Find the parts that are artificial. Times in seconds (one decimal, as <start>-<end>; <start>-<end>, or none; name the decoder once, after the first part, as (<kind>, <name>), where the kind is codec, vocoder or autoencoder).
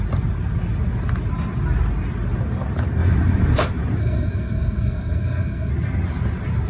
4.0-5.7 (codec, SNAC)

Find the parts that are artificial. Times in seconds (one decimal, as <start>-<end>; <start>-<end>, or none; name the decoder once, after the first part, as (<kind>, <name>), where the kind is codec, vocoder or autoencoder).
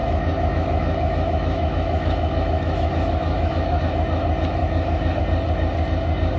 0.0-3.8 (autoencoder, DAC-VAE); 4.6-5.2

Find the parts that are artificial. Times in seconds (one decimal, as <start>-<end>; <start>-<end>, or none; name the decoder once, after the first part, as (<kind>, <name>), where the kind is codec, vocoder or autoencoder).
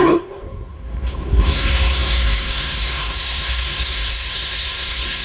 0.0-5.2 (codec, SNAC)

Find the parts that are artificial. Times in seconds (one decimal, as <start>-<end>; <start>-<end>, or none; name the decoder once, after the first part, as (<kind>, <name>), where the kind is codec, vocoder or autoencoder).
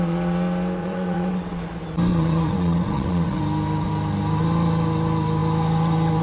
0.8-1.6 (vocoder, WaveNeXt); 2.1-3.4